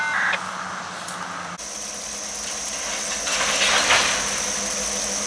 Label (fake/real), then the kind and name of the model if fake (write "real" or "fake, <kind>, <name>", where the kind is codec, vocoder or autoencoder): real